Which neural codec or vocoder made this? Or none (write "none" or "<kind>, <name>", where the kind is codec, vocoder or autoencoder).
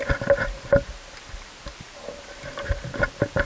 none